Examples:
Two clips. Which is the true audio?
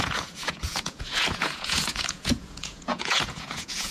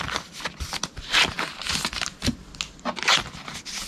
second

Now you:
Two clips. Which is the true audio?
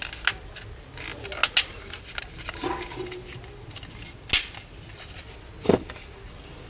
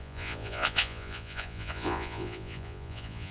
first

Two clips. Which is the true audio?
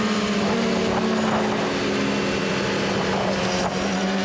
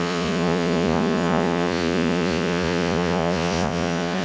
first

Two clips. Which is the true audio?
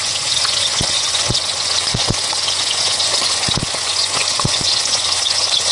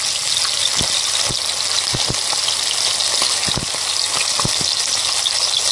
second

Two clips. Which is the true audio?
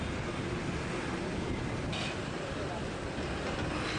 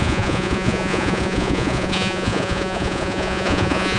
first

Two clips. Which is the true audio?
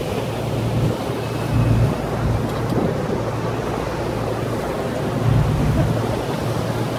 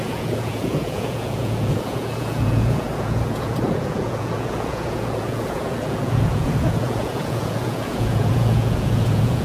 first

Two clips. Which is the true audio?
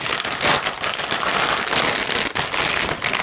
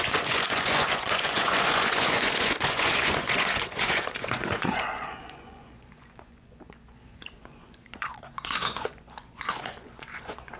first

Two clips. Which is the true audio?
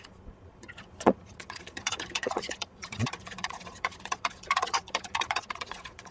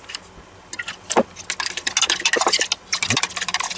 second